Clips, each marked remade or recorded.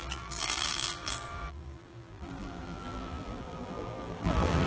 remade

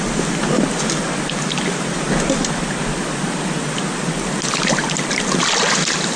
recorded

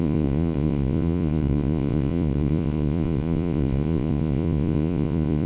remade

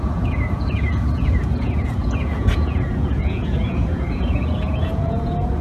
remade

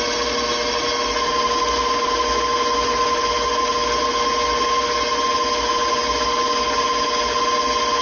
recorded